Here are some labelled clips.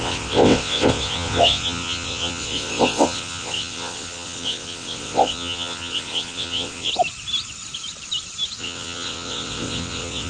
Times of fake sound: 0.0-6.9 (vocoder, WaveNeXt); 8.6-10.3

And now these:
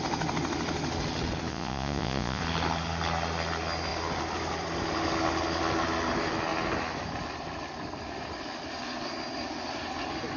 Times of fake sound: 1.5-2.4 (vocoder, Vocos)

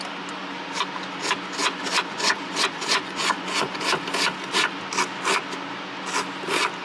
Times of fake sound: 1.6-3.9 (vocoder, Vocos)

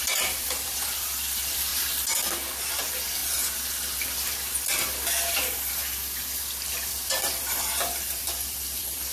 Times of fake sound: 0.0-1.7 (vocoder, BigVGAN v2); 2.7-3.2; 6.7-9.1

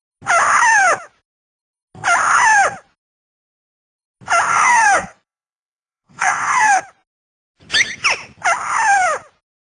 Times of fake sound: 4.5-6.8 (codec, SNAC)

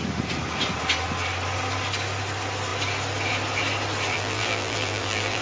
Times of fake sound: 4.1-5.4 (vocoder, BigVGAN v2)

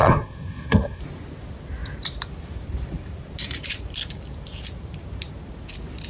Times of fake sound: 0.0-1.0 (codec, SNAC)